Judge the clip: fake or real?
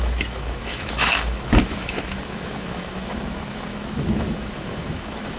fake